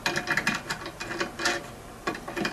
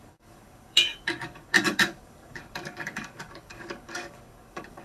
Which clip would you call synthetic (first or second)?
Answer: second